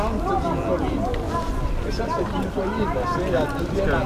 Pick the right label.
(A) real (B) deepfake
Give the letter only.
A